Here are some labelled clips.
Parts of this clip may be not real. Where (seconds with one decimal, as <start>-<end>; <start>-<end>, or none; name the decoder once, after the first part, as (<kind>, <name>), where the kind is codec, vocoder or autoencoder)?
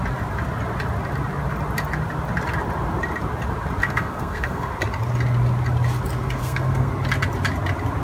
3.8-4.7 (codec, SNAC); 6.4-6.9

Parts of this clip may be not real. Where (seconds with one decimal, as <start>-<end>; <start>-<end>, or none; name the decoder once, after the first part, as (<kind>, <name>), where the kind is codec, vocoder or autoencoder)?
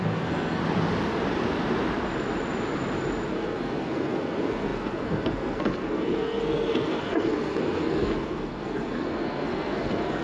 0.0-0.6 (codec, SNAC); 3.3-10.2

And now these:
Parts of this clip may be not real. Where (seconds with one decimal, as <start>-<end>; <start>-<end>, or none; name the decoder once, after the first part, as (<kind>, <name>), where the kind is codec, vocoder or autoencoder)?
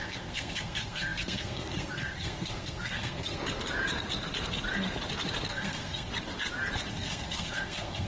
0.0-3.4 (codec, SNAC); 5.5-6.1; 6.9-8.1